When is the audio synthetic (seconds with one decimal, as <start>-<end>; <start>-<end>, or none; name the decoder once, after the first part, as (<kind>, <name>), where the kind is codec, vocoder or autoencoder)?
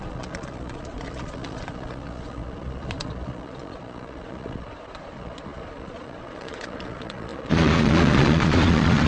0.0-9.1 (vocoder, Vocos)